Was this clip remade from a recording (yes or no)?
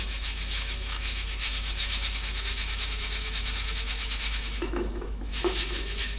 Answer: yes